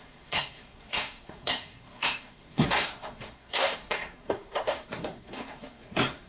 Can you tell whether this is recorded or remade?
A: remade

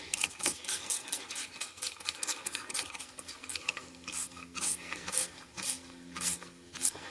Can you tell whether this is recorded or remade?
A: remade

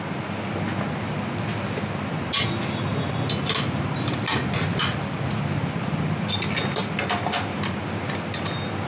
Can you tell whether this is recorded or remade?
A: recorded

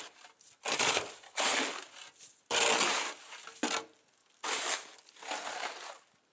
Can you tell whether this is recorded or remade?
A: recorded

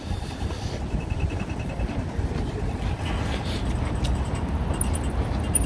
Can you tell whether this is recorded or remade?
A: recorded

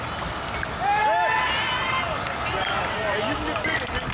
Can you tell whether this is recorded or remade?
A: recorded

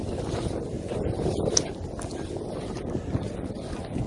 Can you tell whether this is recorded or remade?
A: recorded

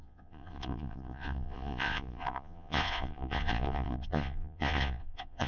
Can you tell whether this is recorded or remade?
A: remade